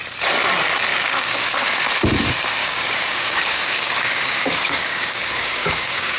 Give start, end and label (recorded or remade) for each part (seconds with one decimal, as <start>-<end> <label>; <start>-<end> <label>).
0.0-0.9 recorded; 0.9-1.9 remade; 1.9-2.6 recorded; 2.6-6.2 remade